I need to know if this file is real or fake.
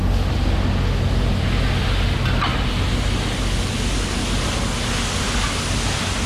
real